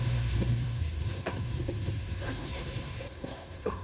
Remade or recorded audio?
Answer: remade